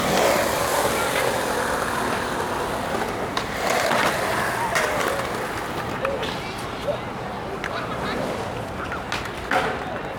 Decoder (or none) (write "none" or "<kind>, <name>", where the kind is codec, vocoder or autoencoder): none